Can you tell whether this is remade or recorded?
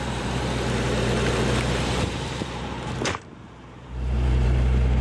remade